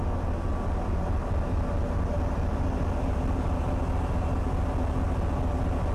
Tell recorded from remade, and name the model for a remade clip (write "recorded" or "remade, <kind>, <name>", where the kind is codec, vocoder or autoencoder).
recorded